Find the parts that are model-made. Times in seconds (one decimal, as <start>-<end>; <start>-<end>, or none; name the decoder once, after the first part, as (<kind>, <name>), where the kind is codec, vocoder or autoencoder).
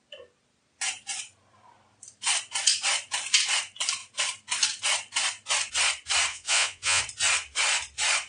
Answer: 6.3-7.0 (vocoder, Vocos)